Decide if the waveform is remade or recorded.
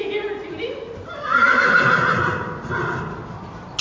recorded